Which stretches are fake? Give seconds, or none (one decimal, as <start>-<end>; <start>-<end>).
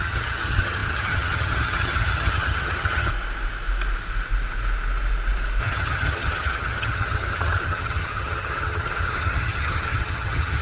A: 0.0-3.1; 5.6-10.6